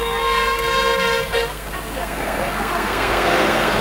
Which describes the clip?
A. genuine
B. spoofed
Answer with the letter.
B